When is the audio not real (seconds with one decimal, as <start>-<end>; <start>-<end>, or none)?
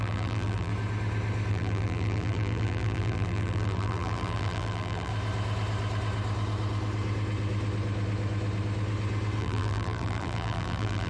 0.0-0.7; 1.5-5.1; 9.4-11.1